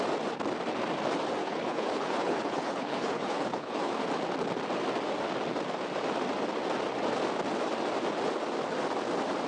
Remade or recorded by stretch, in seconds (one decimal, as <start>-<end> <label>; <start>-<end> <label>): 0.0-1.4 recorded; 1.4-3.9 remade; 3.9-9.5 recorded